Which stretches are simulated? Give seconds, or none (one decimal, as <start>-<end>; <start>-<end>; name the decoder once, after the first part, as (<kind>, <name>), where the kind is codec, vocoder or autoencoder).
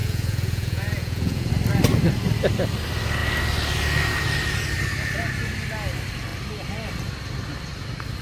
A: 0.0-1.5 (vocoder, Vocos)